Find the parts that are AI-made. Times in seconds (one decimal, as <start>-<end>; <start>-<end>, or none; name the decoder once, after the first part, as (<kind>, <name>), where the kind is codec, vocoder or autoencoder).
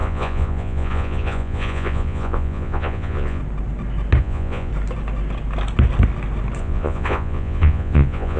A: 0.0-3.4 (vocoder, Vocos); 4.2-4.7; 6.6-8.4